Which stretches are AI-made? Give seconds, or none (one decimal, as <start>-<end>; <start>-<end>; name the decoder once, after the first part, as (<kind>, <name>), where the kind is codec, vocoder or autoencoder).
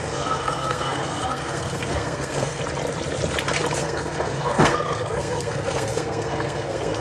0.0-2.6 (codec, SNAC); 3.8-7.0